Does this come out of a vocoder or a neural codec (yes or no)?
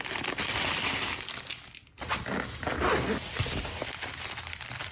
no